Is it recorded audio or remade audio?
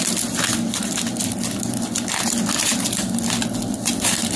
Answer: recorded